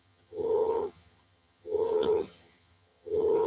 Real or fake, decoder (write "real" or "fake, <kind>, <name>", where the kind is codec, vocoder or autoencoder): fake, vocoder, HiFi-GAN